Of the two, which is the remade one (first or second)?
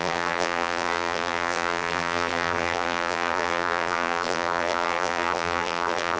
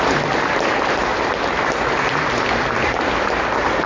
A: first